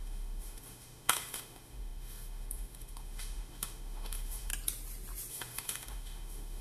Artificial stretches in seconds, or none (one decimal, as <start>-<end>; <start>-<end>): 0.0-4.5; 5.3-6.6